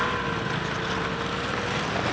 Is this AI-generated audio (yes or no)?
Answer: no